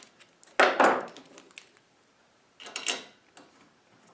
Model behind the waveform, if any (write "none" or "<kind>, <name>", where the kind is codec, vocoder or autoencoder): none